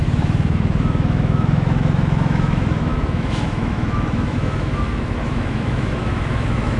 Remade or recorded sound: remade